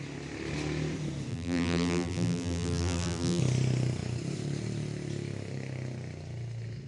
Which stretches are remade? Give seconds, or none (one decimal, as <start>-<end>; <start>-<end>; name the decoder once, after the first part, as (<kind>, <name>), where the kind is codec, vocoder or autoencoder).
1.3-3.4 (vocoder, BigVGAN v2)